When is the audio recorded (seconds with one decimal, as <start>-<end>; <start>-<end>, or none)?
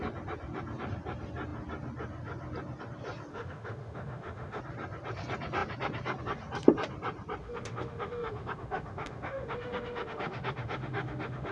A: 0.0-3.3; 4.6-7.4